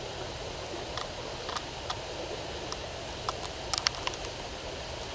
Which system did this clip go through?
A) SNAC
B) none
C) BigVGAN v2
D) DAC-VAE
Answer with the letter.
B